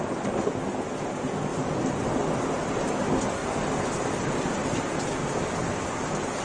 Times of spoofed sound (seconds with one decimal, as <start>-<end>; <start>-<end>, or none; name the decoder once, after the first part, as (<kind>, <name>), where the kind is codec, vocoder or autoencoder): 3.4-3.9 (vocoder, BigVGAN v2); 5.2-6.4